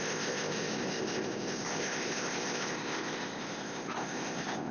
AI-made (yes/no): yes